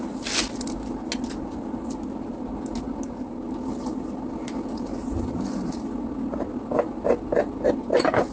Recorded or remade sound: recorded